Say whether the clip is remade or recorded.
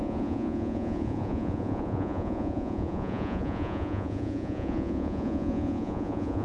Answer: remade